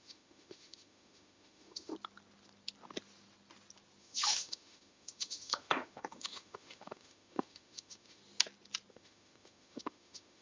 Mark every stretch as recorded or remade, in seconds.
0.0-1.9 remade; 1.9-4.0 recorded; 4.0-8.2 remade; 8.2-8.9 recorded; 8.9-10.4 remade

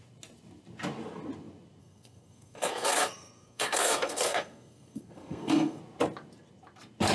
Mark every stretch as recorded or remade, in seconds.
0.0-1.8 recorded; 1.8-5.8 remade; 5.8-7.1 recorded

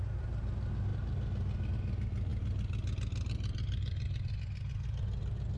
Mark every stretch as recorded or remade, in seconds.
0.0-5.6 recorded

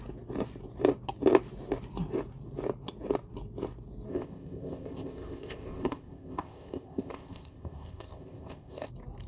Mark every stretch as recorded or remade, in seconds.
0.0-4.1 recorded; 4.1-8.9 remade; 8.9-9.3 recorded

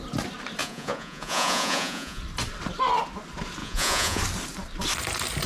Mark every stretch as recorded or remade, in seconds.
0.0-0.6 recorded; 0.6-2.2 remade; 2.2-3.6 recorded; 3.6-4.2 remade; 4.2-5.5 recorded